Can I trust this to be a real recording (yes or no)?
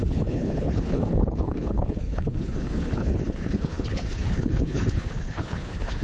no